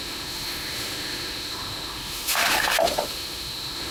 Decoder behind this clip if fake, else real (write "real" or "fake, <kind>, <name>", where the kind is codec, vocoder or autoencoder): fake, autoencoder, DAC-VAE